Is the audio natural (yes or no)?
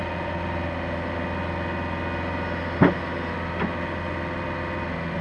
yes